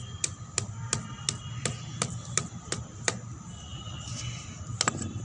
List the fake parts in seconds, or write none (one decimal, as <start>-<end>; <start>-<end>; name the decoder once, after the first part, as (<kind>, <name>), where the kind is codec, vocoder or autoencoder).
none